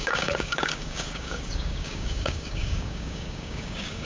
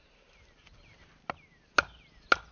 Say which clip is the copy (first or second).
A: first